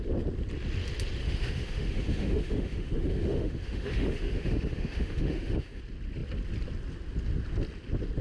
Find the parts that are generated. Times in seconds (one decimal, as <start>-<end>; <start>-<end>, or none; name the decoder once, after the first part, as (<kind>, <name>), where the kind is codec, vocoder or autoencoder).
1.2-5.8 (autoencoder, DAC-VAE)